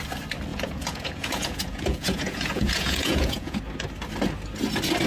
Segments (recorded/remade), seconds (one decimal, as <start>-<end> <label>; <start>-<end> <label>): 0.0-0.5 recorded; 0.5-3.6 remade; 3.6-5.1 recorded